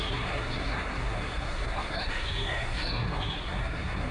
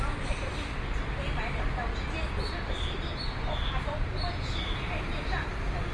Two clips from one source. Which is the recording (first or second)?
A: second